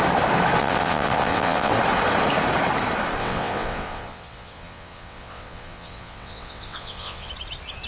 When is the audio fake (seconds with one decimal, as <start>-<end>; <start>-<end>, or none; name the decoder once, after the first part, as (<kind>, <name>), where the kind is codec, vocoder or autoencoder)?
0.6-1.7 (vocoder, WaveNeXt); 3.2-7.3